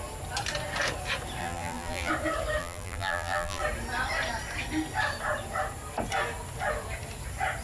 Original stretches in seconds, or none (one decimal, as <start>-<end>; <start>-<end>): 0.0-1.4; 2.1-2.6; 3.6-7.6